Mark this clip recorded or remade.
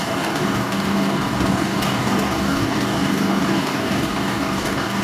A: remade